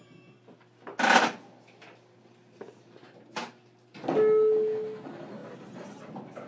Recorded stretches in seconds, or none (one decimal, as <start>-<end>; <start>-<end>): 0.0-6.5